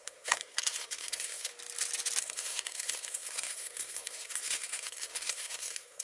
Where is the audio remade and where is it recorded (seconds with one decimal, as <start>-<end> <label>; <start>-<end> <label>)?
0.0-1.5 remade; 1.5-2.2 recorded; 2.2-6.0 remade